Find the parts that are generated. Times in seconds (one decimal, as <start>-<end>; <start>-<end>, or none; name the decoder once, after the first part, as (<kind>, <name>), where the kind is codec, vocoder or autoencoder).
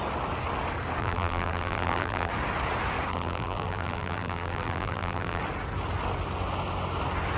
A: 1.0-2.3 (vocoder, BigVGAN v2); 3.1-5.4